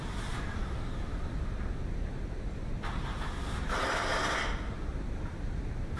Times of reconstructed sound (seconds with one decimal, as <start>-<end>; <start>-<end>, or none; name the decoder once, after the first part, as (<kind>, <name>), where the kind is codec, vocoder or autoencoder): 2.7-4.4 (vocoder, BigVGAN v2); 4.9-5.6

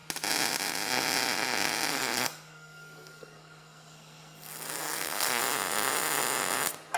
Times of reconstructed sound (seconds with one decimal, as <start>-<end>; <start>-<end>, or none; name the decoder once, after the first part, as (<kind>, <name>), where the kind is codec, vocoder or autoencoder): 1.9-5.4 (codec, SNAC)

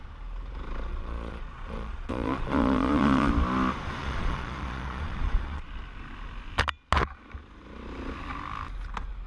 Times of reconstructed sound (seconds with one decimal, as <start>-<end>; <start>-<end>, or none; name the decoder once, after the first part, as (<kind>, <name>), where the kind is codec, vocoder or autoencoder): 0.9-3.3 (vocoder, Vocos); 4.0-5.7